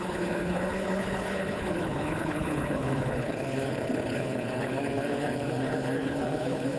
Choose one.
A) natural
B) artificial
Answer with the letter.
B